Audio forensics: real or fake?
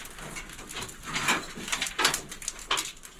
real